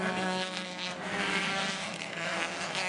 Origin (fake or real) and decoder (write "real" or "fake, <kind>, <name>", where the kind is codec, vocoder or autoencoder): fake, codec, SNAC